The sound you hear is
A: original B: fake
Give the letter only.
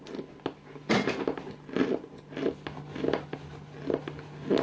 A